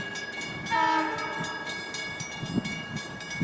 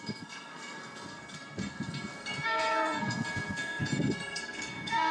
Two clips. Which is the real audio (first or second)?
first